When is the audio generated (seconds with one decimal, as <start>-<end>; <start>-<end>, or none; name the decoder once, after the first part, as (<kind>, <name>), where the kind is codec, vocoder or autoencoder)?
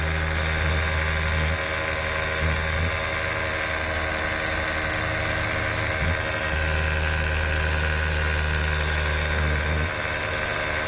none